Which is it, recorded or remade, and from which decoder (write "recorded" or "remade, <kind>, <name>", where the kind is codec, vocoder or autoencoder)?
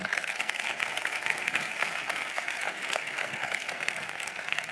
remade, codec, SNAC